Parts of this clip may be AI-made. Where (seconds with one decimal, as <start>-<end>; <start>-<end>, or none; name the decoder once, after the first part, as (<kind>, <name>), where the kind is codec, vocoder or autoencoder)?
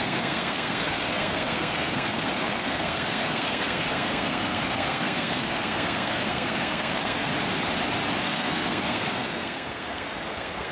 0.0-7.3 (codec, SNAC); 8.2-10.7